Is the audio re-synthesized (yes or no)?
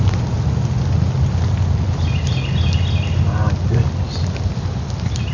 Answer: no